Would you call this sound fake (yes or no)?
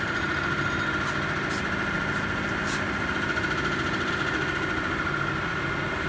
no